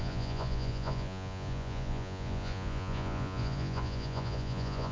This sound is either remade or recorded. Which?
remade